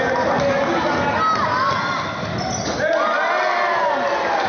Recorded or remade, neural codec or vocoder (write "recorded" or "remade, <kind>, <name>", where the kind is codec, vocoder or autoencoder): recorded